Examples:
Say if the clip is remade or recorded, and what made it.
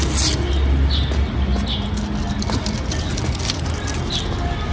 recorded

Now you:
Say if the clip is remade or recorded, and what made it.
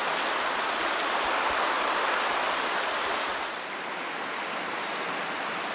remade, vocoder, BigVGAN v2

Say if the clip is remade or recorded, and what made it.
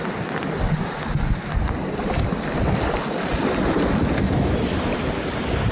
recorded